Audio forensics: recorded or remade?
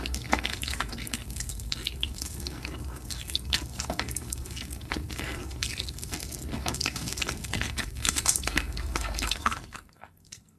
remade